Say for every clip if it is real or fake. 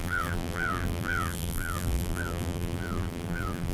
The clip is fake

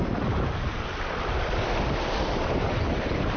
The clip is real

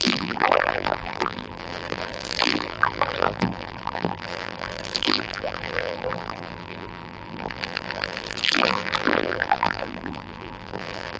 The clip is fake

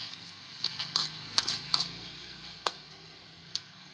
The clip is fake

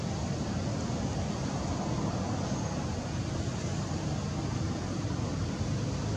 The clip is real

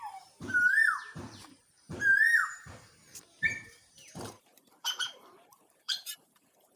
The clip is fake